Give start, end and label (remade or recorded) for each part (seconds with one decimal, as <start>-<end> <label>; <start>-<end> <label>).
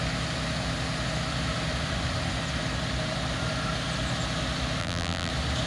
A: 0.0-4.8 recorded; 4.8-5.3 remade; 5.3-5.7 recorded